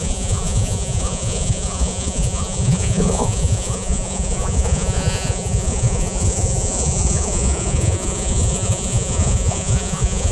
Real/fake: fake